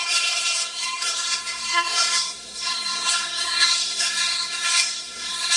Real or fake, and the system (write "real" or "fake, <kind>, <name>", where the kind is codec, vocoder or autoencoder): fake, codec, SNAC